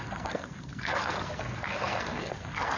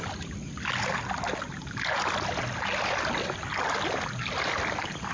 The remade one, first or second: first